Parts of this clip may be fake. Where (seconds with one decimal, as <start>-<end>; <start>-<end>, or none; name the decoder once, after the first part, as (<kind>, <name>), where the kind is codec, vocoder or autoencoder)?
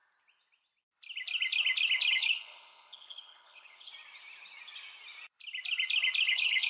2.1-3.9 (codec, HILCodec); 6.3-6.7